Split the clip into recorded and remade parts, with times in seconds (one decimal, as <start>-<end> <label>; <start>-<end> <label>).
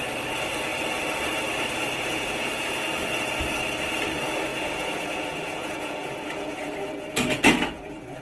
0.0-2.1 recorded; 2.1-2.8 remade; 2.8-4.5 recorded; 4.5-8.2 remade